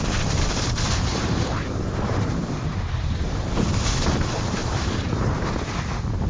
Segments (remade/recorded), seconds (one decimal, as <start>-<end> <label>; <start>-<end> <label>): 0.0-1.1 recorded; 1.1-3.4 remade; 3.4-4.6 recorded; 4.6-5.5 remade; 5.5-6.3 recorded